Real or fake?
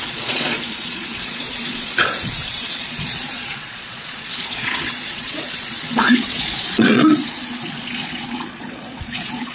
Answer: fake